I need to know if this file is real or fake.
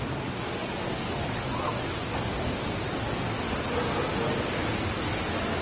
real